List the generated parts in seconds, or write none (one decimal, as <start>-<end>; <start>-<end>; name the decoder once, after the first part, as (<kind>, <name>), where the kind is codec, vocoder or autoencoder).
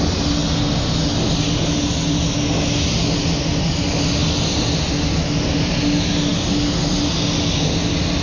none